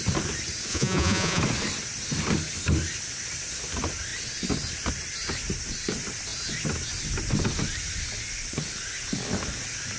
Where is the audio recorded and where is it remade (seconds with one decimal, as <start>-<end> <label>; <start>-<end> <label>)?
0.0-0.7 recorded; 0.7-1.4 remade; 1.4-10.0 recorded